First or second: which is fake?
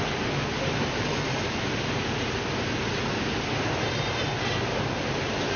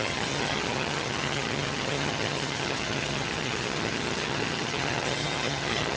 second